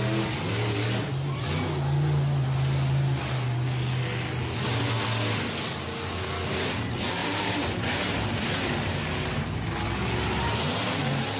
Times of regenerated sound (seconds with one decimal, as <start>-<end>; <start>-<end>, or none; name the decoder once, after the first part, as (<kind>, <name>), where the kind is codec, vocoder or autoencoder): 7.2-8.0 (vocoder, BigVGAN v2)